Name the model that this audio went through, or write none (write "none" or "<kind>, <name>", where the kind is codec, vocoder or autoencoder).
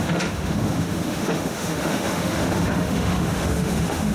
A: autoencoder, DAC-VAE